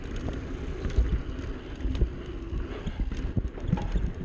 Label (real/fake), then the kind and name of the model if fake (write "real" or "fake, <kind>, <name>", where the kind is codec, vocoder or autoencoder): real